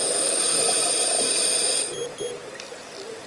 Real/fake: real